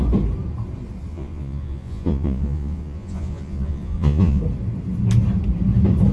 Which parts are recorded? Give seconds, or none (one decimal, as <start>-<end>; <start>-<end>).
0.0-1.1; 4.4-6.1